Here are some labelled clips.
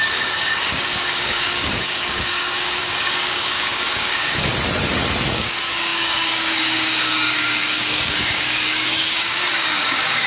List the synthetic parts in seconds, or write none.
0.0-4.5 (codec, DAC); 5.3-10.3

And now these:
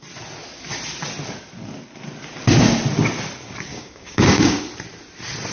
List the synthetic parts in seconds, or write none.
3.7-4.6 (codec, DAC)